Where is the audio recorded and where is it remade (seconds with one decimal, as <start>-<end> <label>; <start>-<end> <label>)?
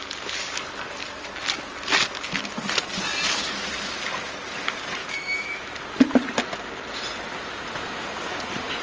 0.0-5.0 recorded; 5.0-5.7 remade; 5.7-8.8 recorded